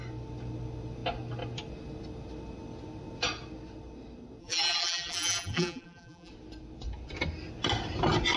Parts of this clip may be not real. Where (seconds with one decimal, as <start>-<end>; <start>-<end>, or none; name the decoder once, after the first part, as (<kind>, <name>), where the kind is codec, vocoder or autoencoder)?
4.4-6.3 (vocoder, BigVGAN v2)